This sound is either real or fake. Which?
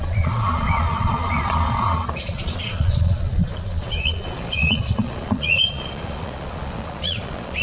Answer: fake